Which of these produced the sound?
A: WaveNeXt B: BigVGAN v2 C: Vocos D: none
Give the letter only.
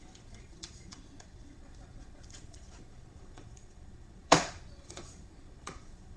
C